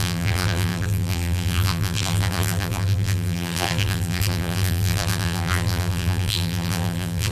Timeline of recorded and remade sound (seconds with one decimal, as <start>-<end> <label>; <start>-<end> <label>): 0.0-7.3 remade